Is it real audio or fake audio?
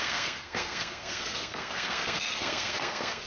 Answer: fake